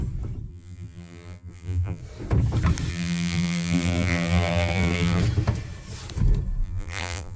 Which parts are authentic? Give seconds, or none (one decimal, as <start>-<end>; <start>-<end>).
0.0-0.5; 2.0-2.9; 5.2-6.6